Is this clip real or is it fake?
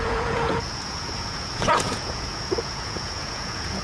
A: fake